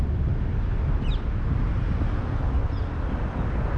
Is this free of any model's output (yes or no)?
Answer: yes